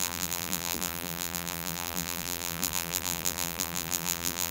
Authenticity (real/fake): fake